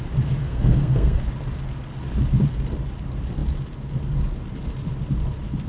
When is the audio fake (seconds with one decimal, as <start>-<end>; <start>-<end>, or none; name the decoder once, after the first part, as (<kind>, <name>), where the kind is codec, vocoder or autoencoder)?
0.4-1.2 (codec, SNAC)